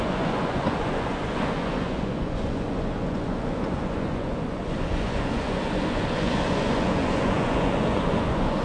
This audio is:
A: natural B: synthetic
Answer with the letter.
B